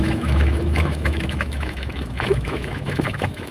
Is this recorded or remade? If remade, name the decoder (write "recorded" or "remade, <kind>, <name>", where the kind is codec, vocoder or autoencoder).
remade, autoencoder, DAC-VAE